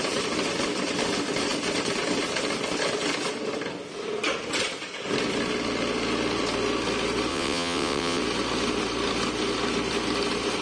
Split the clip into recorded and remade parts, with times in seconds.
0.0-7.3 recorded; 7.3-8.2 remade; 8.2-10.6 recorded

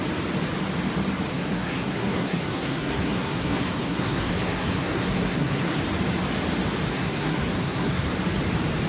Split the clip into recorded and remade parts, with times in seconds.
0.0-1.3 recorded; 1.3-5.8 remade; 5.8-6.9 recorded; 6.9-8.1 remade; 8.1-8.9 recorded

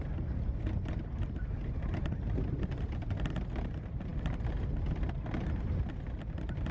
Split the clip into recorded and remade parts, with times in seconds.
0.0-6.7 recorded

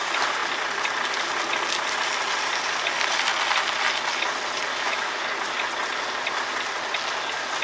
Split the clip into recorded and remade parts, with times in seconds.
0.0-4.7 recorded; 4.7-5.2 remade; 5.2-7.6 recorded